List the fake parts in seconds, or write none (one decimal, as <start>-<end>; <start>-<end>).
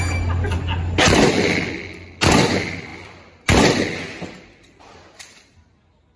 none